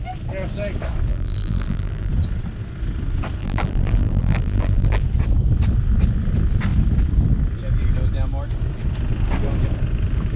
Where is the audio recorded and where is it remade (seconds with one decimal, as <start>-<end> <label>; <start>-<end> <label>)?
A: 0.0-1.1 recorded; 1.1-2.1 remade; 2.1-3.4 recorded; 3.4-5.0 remade; 5.0-10.4 recorded